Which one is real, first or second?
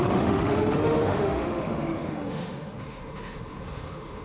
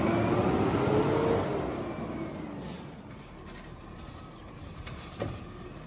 second